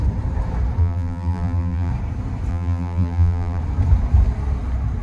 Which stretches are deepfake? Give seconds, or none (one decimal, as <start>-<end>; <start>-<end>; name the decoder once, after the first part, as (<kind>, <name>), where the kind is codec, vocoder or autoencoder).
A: 0.8-1.9 (vocoder, BigVGAN v2); 2.5-3.6